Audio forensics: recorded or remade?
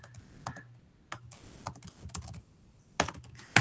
recorded